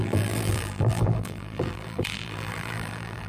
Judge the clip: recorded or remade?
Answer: remade